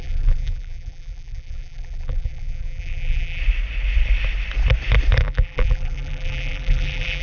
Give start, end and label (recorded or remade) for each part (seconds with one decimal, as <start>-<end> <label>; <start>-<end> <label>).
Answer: 0.0-3.4 remade; 3.4-5.2 recorded; 5.2-7.2 remade